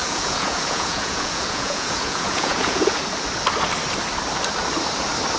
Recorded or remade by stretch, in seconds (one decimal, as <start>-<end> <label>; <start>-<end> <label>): 0.0-3.0 remade; 3.0-5.4 recorded